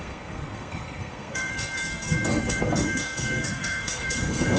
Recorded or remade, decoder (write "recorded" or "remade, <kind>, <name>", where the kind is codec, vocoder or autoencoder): remade, codec, SNAC